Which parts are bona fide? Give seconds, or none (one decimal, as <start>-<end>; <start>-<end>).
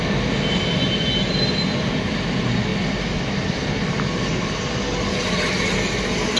0.0-6.4